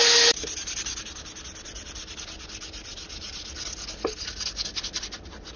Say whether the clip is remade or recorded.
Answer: recorded